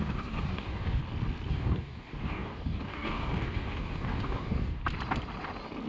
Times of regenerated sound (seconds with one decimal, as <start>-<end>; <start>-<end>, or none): 0.0-1.0; 1.5-4.8